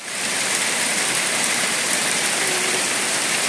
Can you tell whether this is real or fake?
fake